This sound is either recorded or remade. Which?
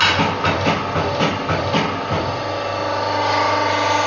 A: recorded